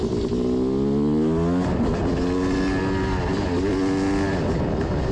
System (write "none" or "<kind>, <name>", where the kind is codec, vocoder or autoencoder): none